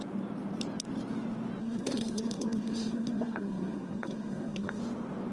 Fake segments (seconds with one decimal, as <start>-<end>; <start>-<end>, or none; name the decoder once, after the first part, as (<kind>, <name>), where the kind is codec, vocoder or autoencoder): 1.6-4.8 (codec, SNAC)